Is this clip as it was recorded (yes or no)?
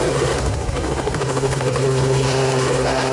no